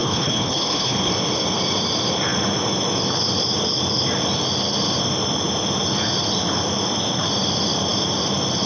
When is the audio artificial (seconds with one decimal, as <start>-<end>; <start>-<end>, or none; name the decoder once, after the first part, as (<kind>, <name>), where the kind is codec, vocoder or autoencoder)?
0.0-1.1 (codec, HILCodec)